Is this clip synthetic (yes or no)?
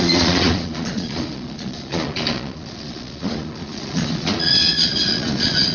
yes